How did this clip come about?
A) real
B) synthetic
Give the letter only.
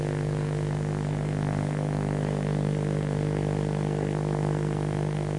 B